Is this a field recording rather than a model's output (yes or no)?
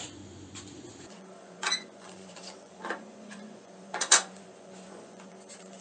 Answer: no